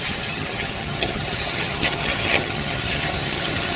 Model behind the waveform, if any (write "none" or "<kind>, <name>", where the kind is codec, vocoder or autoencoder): vocoder, HiFi-GAN